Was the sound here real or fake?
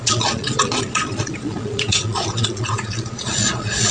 fake